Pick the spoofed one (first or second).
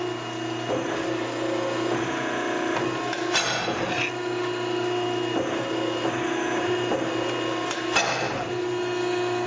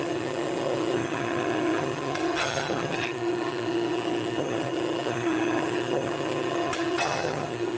second